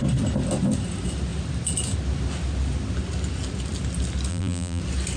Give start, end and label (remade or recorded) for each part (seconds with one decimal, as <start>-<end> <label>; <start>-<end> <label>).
0.0-4.3 recorded; 4.3-4.8 remade; 4.8-5.2 recorded